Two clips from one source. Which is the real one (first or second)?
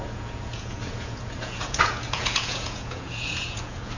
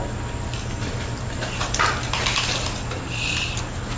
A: second